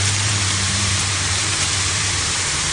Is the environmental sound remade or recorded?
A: remade